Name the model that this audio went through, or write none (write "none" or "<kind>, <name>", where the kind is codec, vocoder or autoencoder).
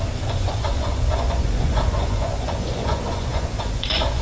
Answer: vocoder, Vocos